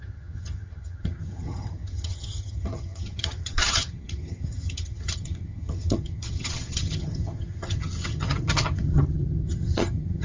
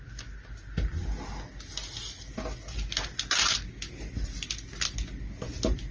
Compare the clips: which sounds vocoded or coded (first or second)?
first